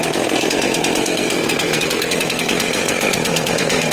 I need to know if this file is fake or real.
fake